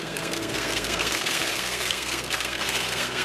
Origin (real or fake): fake